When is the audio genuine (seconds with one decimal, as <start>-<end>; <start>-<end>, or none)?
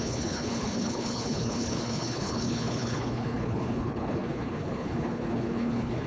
none